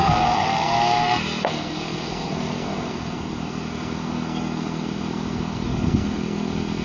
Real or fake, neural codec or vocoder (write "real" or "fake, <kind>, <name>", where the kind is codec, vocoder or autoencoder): fake, codec, SNAC